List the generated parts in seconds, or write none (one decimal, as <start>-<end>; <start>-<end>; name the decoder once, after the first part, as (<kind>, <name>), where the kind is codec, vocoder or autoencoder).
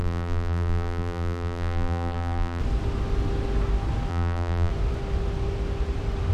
0.0-2.6 (vocoder, BigVGAN v2); 4.1-4.7